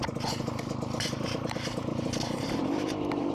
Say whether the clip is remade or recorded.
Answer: remade